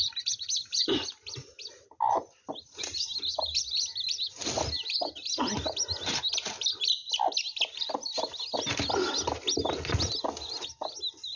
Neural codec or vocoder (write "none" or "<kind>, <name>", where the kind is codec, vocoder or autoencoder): none